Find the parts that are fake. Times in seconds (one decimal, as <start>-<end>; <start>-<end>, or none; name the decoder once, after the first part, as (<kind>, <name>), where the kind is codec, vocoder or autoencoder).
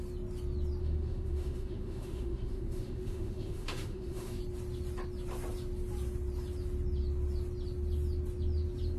0.8-4.4 (autoencoder, DAC-VAE)